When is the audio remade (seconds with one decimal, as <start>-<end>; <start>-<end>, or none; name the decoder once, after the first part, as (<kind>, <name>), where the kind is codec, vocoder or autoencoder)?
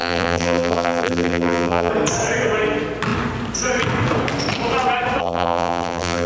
0.0-1.9 (vocoder, BigVGAN v2); 5.2-6.3